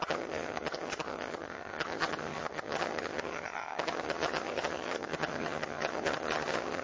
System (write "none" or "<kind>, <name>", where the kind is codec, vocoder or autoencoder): vocoder, HiFi-GAN